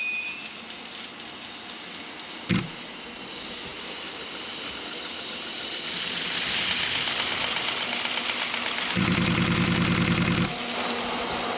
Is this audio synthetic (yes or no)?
no